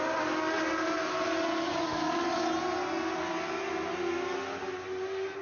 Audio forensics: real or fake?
real